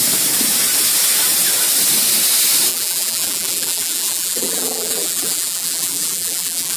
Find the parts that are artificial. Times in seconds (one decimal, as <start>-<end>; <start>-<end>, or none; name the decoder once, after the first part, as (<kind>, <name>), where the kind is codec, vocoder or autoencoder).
2.7-6.8 (vocoder, BigVGAN v2)